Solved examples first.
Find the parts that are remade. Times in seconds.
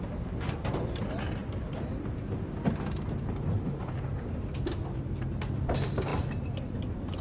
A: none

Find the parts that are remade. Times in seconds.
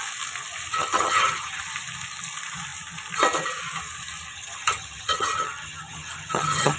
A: 0.7-1.6 (vocoder, HiFi-GAN); 4.3-6.8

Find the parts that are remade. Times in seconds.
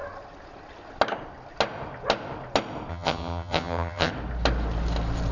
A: 2.9-4.1 (vocoder, HiFi-GAN)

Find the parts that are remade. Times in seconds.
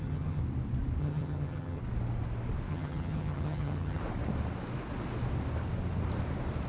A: 0.0-0.4 (vocoder, HiFi-GAN); 1.0-1.8; 2.7-4.0